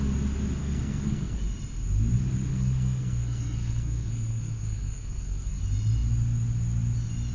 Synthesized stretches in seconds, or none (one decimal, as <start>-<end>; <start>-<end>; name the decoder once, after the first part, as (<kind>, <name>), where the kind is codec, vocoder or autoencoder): 0.6-1.4 (codec, SNAC); 2.5-5.6